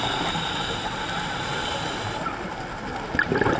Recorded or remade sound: recorded